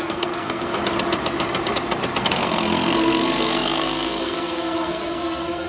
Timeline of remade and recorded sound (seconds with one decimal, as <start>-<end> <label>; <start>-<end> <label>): 0.0-0.7 remade; 0.7-2.2 recorded; 2.2-5.7 remade

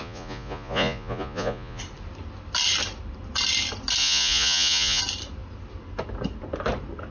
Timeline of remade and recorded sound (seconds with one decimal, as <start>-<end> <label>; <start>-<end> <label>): 0.0-1.8 remade; 1.8-4.0 recorded; 4.0-5.0 remade; 5.0-7.1 recorded

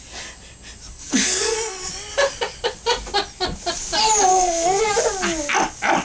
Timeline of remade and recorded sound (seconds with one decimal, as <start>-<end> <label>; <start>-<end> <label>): 0.0-0.9 recorded; 0.9-1.9 remade; 1.9-4.3 recorded; 4.3-4.8 remade; 4.8-6.0 recorded

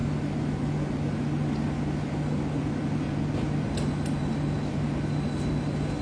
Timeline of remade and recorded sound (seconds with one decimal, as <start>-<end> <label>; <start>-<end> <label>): 0.0-6.0 recorded

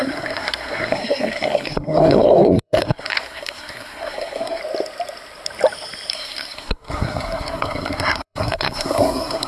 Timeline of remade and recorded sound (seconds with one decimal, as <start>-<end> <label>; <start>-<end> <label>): 0.0-4.6 remade; 4.6-6.1 recorded; 6.1-9.5 remade

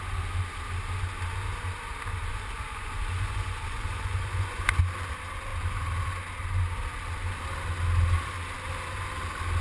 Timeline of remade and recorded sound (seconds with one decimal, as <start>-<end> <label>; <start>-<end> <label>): 0.0-2.3 recorded; 2.3-4.7 remade; 4.7-9.6 recorded